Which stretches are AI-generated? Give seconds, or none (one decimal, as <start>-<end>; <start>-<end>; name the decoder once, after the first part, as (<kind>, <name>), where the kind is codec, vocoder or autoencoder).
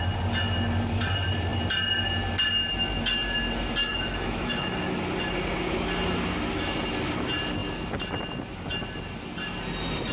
3.8-5.0 (autoencoder, DAC-VAE)